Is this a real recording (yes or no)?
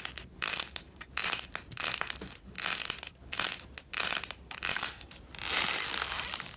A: yes